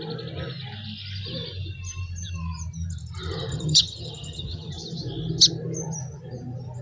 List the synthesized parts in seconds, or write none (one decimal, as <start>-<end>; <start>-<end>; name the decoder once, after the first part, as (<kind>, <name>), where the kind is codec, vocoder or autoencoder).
3.5-4.7 (vocoder, HiFi-GAN)